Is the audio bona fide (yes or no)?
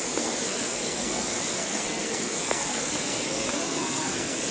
no